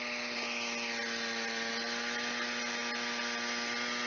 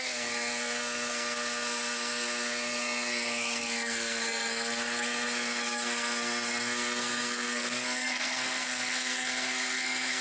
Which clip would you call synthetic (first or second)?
second